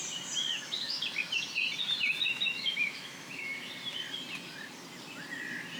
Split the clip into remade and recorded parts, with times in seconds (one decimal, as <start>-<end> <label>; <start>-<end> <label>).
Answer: 0.0-0.5 recorded; 0.5-1.0 remade; 1.0-2.3 recorded; 2.3-3.7 remade; 3.7-5.8 recorded